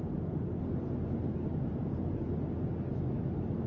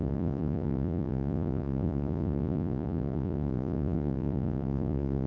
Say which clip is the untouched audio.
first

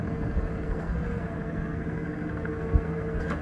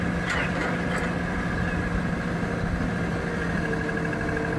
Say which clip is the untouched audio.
second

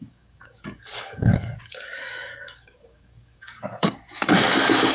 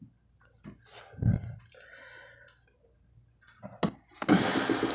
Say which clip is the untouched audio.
second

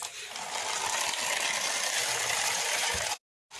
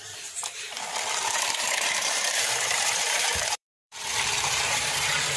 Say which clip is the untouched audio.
first